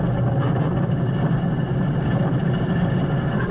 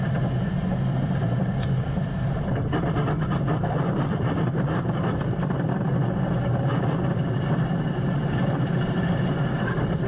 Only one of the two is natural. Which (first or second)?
first